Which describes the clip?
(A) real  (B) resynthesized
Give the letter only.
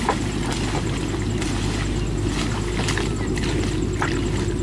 A